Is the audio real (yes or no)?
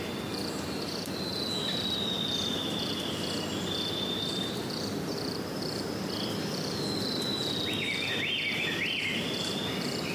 yes